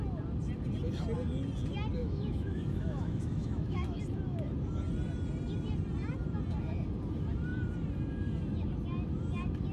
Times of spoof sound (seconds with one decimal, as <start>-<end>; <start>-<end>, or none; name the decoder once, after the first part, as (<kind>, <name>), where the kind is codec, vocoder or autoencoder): 2.0-4.0 (autoencoder, DAC-VAE)